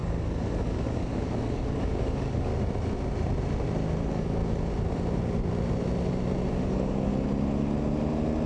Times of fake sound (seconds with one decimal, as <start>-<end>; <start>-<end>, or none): 0.0-2.5; 4.0-4.4; 6.5-7.1